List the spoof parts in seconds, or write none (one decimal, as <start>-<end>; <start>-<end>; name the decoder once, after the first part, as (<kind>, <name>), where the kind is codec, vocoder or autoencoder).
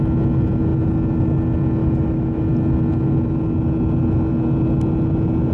1.8-2.4 (autoencoder, DAC-VAE)